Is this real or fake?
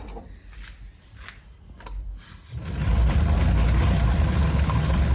real